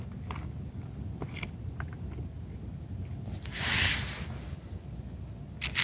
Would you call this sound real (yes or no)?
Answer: yes